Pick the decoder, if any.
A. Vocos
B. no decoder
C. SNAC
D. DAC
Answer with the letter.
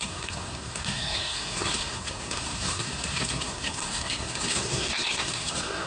C